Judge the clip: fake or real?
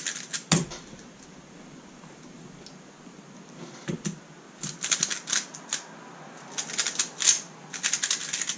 real